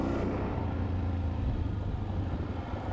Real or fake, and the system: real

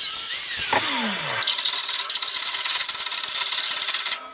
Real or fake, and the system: real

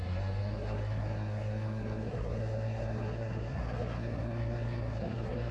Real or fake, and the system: fake, codec, SNAC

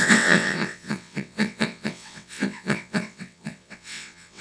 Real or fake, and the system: fake, vocoder, WaveNeXt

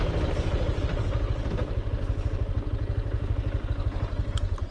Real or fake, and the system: real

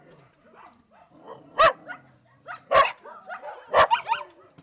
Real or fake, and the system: real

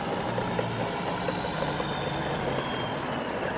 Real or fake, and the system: real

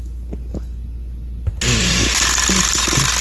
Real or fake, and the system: real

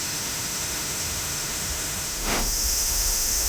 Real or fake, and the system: fake, autoencoder, DAC-VAE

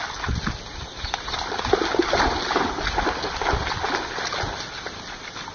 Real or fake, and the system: real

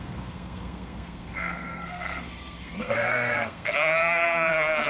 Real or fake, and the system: fake, codec, SNAC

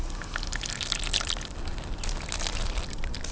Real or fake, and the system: real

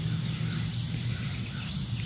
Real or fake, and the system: real